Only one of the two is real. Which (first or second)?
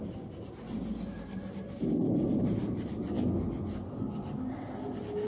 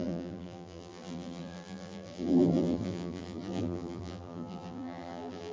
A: first